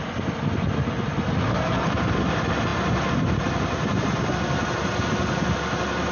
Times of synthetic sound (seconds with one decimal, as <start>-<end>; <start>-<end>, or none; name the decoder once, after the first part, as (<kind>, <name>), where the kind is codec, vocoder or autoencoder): none